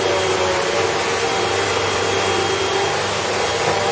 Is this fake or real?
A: real